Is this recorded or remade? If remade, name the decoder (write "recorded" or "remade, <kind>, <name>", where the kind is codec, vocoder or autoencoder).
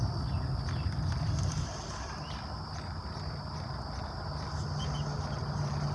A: recorded